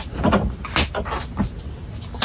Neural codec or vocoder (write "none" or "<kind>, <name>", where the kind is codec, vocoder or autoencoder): none